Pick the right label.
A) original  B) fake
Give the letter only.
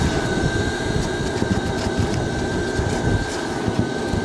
A